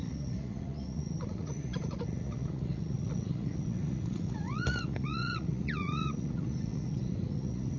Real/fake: fake